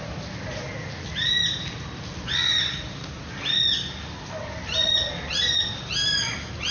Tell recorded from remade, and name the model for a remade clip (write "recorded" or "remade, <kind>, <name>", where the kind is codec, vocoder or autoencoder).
recorded